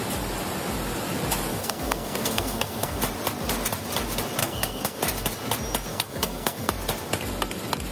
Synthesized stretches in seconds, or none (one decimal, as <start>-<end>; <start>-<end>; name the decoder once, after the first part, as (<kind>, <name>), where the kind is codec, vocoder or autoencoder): 1.5-3.0 (codec, SNAC); 4.4-5.0; 5.9-6.7